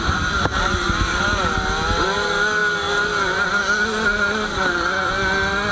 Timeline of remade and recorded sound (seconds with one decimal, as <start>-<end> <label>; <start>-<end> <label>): 0.0-5.7 recorded